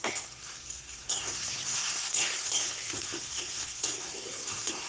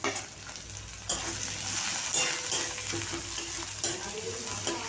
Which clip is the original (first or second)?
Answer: second